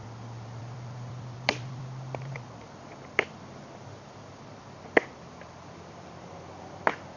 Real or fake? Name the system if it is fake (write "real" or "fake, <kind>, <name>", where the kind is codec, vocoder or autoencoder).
fake, vocoder, BigVGAN v2